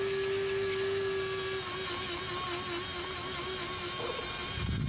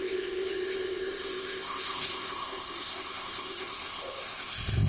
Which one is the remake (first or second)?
second